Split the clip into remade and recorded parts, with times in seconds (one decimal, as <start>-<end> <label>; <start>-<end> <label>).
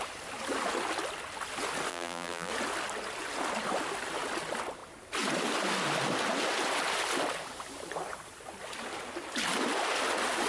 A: 0.0-1.9 recorded; 1.9-2.5 remade; 2.5-10.5 recorded